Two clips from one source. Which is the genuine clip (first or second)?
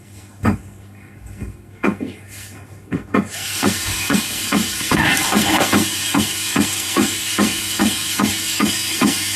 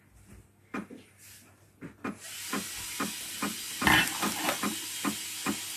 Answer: second